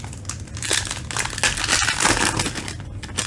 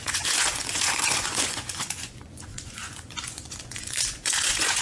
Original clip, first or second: first